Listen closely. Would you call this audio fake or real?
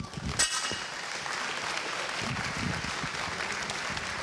real